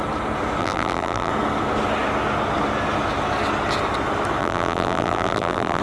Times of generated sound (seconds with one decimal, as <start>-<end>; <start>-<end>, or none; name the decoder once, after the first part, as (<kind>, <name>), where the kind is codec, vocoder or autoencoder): 0.6-1.3 (vocoder, BigVGAN v2); 4.4-5.8